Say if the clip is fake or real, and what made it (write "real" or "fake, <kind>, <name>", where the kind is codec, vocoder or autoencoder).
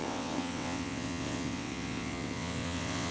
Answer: fake, vocoder, WaveNeXt